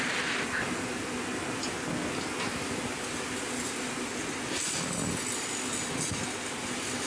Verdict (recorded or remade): recorded